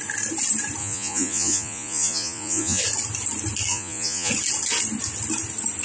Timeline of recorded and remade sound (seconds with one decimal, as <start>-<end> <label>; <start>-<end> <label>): 0.0-0.8 recorded; 0.8-2.8 remade; 2.8-3.7 recorded; 3.7-4.3 remade; 4.3-5.8 recorded